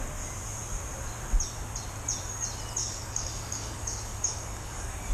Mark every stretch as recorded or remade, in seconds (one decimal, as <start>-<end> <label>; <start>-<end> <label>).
0.0-2.8 recorded; 2.8-5.1 remade